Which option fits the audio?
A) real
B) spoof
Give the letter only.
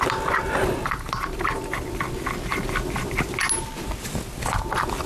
A